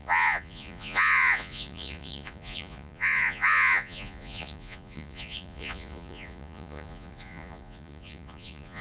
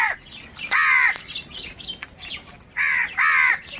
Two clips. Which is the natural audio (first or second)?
second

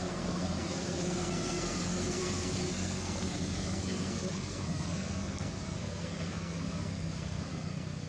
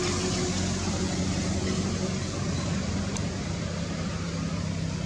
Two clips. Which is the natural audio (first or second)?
second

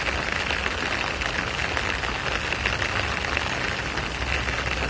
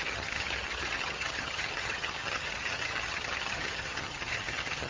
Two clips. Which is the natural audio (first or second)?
first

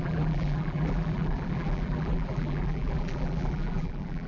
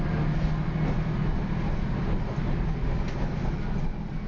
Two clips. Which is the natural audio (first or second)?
second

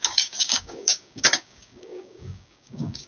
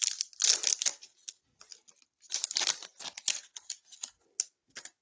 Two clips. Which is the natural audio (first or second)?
second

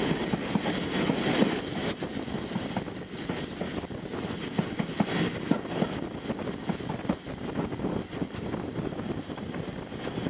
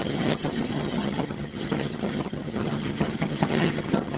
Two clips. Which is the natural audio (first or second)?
first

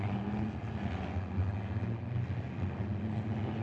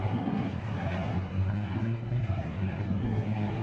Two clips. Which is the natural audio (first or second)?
first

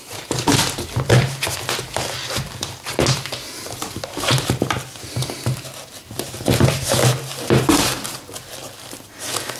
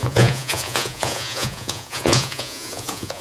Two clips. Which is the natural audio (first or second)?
first